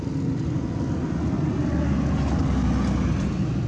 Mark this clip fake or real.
real